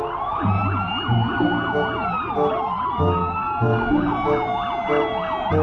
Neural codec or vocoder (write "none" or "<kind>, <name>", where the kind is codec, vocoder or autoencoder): none